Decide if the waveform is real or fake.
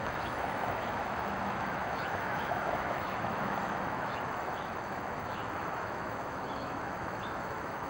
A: fake